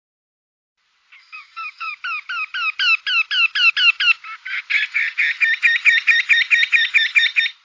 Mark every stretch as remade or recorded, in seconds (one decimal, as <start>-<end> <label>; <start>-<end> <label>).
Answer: 0.0-1.2 recorded; 1.2-1.9 remade; 1.9-7.6 recorded